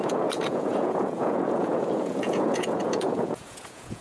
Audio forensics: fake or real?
fake